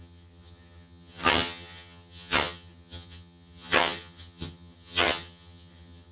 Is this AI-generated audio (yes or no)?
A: yes